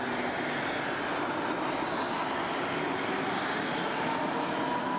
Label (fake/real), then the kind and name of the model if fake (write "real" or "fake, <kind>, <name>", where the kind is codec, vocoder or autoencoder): real